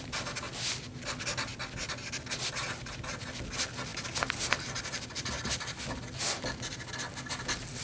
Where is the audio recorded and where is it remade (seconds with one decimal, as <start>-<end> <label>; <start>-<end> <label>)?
0.0-7.8 recorded